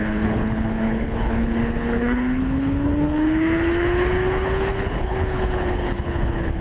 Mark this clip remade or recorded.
remade